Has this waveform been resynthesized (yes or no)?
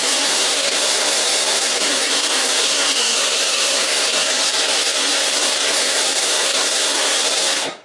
yes